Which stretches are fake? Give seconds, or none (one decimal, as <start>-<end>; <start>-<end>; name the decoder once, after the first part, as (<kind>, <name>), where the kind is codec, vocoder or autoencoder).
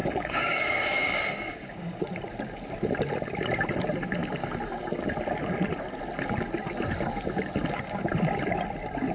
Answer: 0.0-2.0 (codec, DAC)